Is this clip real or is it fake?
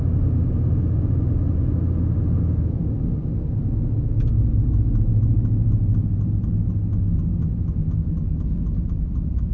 real